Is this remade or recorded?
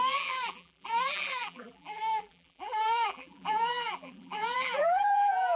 remade